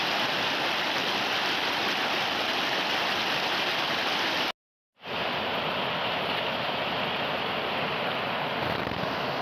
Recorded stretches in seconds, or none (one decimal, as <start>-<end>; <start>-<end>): 0.0-9.4